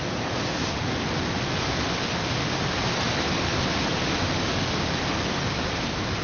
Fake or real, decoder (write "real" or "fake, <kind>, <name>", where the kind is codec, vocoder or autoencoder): real